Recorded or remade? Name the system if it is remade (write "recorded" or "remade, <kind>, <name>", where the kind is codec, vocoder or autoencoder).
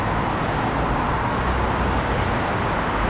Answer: recorded